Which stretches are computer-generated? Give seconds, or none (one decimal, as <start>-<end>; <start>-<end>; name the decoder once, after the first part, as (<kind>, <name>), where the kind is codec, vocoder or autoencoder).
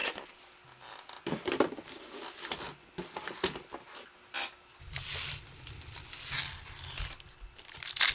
none